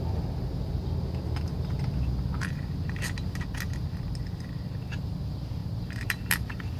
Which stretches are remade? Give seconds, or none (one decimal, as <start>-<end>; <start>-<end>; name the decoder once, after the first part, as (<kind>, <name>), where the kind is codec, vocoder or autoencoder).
5.6-6.8 (vocoder, BigVGAN v2)